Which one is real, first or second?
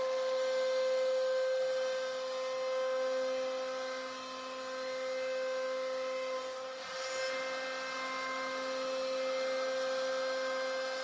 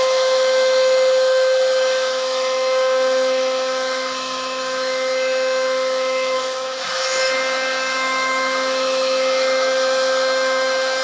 first